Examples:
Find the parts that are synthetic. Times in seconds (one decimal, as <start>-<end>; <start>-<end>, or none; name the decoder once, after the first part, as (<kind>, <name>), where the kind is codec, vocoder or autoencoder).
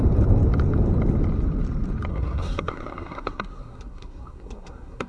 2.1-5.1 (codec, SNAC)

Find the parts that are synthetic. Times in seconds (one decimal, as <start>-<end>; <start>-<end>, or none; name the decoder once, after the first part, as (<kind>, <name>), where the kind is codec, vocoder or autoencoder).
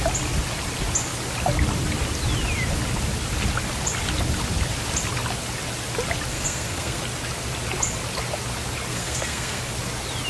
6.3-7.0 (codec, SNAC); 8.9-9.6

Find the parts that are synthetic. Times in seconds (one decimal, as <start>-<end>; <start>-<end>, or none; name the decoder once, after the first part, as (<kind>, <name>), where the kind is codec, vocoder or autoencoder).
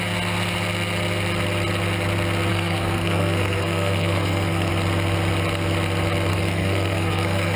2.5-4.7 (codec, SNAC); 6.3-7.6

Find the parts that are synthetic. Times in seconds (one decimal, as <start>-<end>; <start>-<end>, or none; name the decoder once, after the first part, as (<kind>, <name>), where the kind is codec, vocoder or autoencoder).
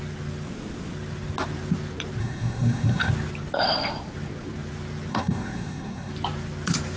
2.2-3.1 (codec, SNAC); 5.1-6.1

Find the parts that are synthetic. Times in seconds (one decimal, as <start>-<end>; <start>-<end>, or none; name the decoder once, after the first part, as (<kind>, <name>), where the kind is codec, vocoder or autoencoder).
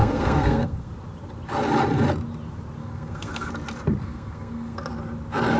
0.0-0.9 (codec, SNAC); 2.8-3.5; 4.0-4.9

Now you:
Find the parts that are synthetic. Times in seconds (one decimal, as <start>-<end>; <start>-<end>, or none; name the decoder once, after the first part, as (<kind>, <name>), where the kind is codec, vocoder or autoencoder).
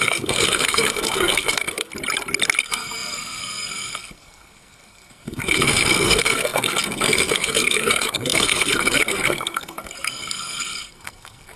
0.0-1.9 (codec, SNAC); 2.6-11.6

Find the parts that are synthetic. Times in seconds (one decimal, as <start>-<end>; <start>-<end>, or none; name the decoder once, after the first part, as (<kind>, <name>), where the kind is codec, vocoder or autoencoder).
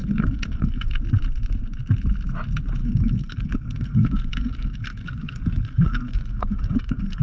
0.0-0.9 (codec, SNAC); 2.8-7.2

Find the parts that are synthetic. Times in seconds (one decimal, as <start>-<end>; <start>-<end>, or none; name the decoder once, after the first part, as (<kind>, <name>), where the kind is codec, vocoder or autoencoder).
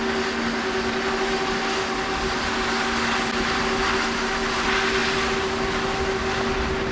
none